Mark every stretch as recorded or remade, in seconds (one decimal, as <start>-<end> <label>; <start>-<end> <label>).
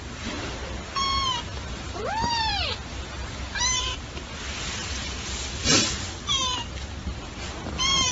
0.0-1.5 recorded; 1.5-2.5 remade; 2.5-8.1 recorded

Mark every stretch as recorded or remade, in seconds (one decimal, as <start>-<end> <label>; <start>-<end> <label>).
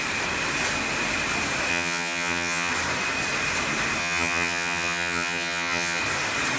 0.0-1.7 recorded; 1.7-2.7 remade; 2.7-4.0 recorded; 4.0-6.0 remade; 6.0-6.6 recorded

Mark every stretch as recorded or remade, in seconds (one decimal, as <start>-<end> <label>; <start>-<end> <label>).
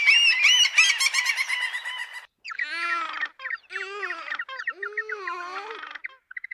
0.0-6.5 recorded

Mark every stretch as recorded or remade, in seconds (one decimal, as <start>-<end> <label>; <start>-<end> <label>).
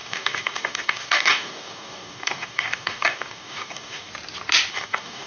0.0-4.1 remade; 4.1-4.7 recorded; 4.7-5.3 remade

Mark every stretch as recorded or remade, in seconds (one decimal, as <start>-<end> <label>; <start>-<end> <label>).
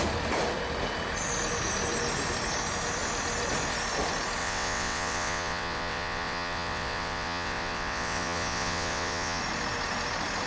0.0-4.4 recorded; 4.4-9.4 remade; 9.4-10.5 recorded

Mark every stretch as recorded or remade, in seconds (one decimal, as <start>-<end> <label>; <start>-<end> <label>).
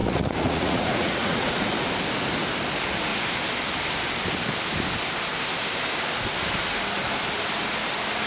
0.0-1.7 remade; 1.7-8.3 recorded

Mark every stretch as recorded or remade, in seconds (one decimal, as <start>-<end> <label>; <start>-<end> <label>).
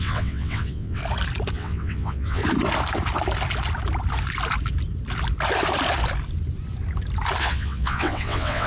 0.0-1.0 remade; 1.0-1.5 recorded; 1.5-2.4 remade; 2.4-7.4 recorded; 7.4-8.7 remade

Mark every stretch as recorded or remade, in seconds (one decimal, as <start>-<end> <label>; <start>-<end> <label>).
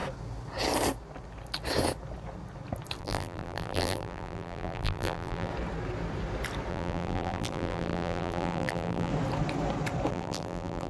0.0-3.0 recorded; 3.0-5.5 remade; 5.5-6.7 recorded; 6.7-9.1 remade; 9.1-10.1 recorded; 10.1-10.9 remade